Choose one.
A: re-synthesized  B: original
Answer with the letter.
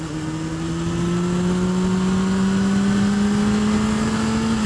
B